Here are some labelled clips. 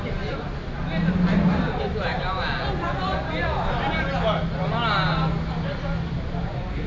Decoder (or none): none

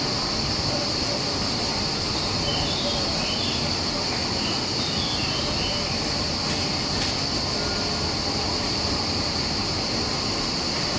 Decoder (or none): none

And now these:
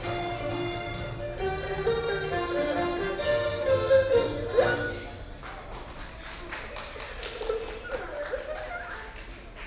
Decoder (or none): none